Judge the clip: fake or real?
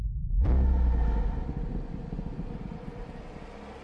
real